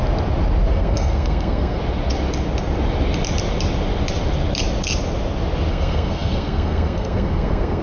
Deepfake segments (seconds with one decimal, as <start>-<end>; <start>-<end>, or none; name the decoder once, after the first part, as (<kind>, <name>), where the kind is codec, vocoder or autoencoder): 0.7-1.8 (codec, SNAC); 5.7-7.8